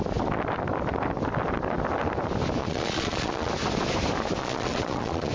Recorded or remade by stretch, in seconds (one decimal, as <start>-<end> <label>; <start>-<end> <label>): 0.0-2.6 recorded; 2.6-3.5 remade; 3.5-4.4 recorded; 4.4-5.3 remade